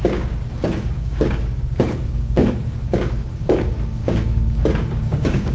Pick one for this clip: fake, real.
fake